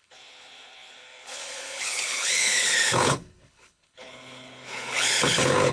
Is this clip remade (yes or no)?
yes